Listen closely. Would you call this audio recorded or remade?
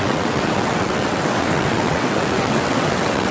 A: remade